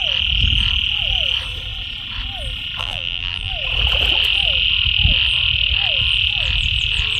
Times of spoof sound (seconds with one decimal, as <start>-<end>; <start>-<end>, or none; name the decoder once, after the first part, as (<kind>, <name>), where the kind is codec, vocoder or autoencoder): 2.8-3.5 (vocoder, BigVGAN v2)